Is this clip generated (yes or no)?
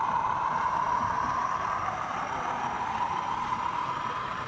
yes